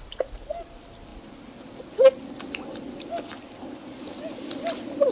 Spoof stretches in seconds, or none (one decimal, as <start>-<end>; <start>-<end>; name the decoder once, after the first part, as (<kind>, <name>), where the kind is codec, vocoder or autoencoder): none